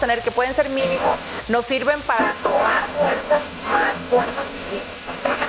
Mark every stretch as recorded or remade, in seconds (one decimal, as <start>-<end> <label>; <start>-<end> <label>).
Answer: 0.0-0.8 recorded; 0.8-1.4 remade; 1.4-2.2 recorded; 2.2-5.5 remade